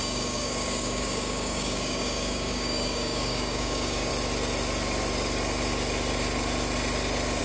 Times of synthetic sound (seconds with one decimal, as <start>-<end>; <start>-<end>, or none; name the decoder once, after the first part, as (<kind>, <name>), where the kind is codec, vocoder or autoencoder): 0.0-4.1 (codec, DAC)